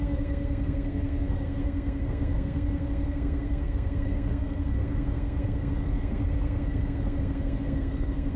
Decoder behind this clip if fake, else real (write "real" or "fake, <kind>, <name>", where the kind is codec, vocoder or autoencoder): fake, codec, SNAC